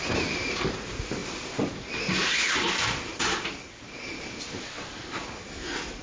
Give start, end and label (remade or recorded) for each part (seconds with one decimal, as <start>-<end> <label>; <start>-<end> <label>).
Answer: 0.0-6.0 recorded